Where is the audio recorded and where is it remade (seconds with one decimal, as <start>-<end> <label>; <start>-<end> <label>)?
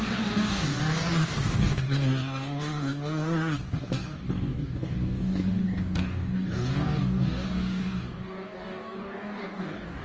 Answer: 0.0-10.0 remade